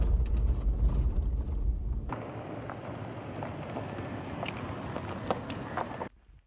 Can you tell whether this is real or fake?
real